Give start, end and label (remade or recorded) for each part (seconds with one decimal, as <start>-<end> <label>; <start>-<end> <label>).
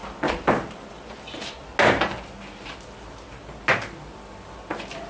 0.0-5.1 recorded